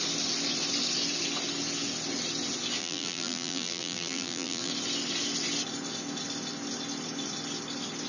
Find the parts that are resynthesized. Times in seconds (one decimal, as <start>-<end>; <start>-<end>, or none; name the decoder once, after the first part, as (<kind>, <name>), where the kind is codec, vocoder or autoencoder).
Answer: 2.8-4.7 (vocoder, BigVGAN v2)